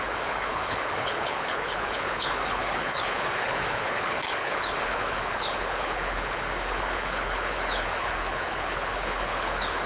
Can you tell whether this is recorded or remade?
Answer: remade